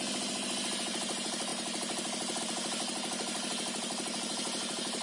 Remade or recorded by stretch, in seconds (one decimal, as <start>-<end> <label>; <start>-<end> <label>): 0.0-5.0 recorded